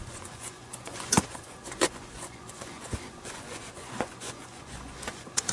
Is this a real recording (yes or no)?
no